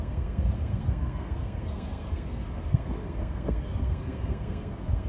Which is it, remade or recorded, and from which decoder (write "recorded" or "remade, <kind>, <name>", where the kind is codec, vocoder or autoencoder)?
remade, codec, SNAC